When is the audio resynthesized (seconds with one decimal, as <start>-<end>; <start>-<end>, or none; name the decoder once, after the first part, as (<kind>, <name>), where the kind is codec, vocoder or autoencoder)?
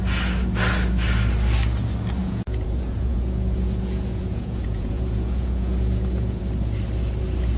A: 2.2-6.4 (vocoder, Vocos)